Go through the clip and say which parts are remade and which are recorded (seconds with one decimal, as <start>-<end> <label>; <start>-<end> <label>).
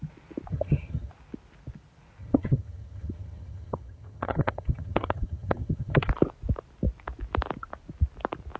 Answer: 0.0-0.5 recorded; 0.5-1.1 remade; 1.1-2.2 recorded; 2.2-6.1 remade; 6.1-8.6 recorded